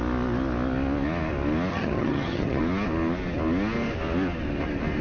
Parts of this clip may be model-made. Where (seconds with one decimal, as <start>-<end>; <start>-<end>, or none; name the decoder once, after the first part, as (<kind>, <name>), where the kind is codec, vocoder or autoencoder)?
1.7-2.6 (vocoder, HiFi-GAN)